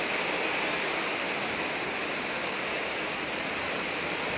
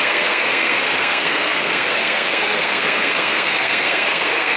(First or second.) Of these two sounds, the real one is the first